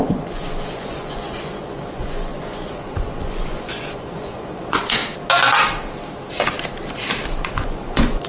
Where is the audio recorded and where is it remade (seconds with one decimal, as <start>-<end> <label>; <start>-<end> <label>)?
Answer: 0.0-5.0 remade; 5.0-7.4 recorded; 7.4-8.3 remade